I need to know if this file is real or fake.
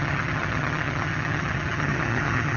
fake